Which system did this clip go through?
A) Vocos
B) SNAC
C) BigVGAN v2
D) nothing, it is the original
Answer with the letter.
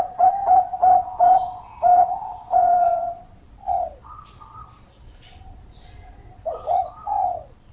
A